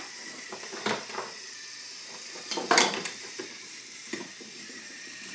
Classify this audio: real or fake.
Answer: fake